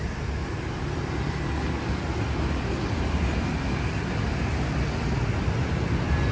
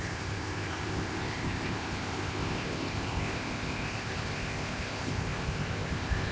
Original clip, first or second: first